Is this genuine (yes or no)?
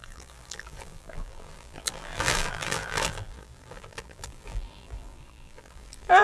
no